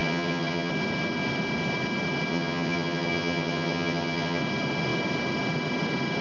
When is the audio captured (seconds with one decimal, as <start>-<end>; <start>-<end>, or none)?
0.7-2.3; 4.4-6.2